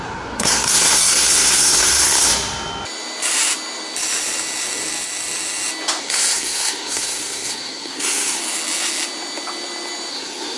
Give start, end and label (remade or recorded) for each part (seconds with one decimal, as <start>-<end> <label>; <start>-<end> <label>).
0.0-2.3 remade; 2.3-6.0 recorded; 6.0-8.4 remade; 8.4-10.1 recorded; 10.1-10.6 remade